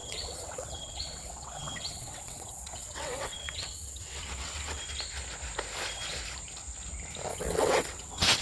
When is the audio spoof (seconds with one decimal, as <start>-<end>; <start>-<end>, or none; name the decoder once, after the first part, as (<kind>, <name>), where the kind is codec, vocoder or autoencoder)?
0.0-4.8 (vocoder, WaveNeXt); 7.3-8.4